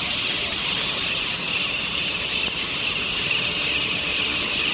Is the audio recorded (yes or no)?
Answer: yes